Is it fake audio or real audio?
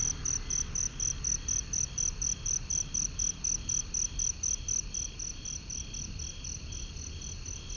fake